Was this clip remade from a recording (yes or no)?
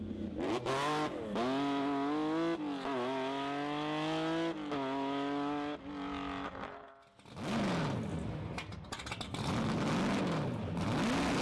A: no